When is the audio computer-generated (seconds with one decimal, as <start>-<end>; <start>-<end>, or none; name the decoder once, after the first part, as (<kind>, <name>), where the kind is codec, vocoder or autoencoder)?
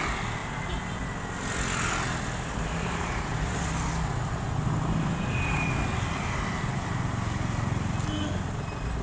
none